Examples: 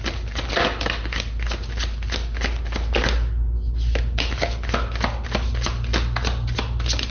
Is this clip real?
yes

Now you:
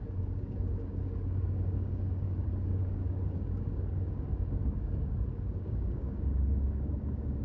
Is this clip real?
no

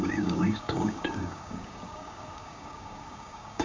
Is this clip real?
no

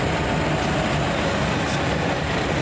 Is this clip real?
yes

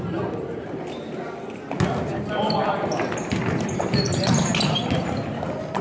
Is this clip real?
yes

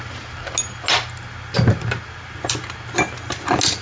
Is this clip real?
yes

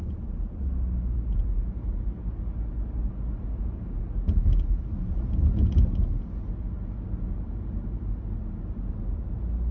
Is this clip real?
yes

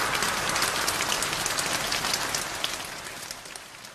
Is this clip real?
yes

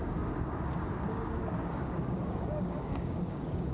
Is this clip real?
no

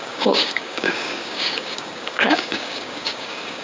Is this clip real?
no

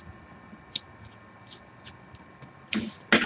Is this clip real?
yes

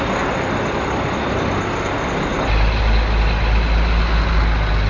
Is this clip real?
yes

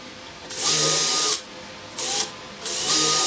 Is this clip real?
yes